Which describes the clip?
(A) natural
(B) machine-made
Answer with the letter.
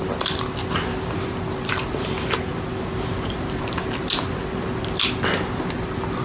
A